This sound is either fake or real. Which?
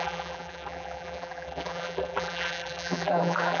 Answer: fake